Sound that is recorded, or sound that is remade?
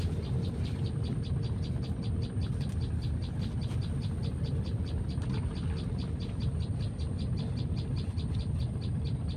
recorded